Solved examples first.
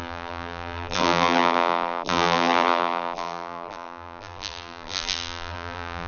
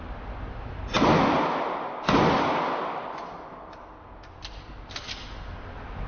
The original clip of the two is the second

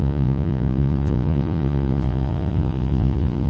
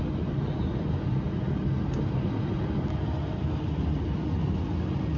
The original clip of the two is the second